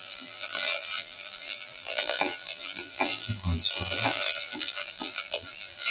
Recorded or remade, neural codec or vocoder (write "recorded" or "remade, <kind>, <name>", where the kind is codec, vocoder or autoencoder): remade, vocoder, BigVGAN v2